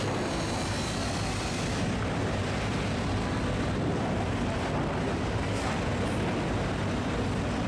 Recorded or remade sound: recorded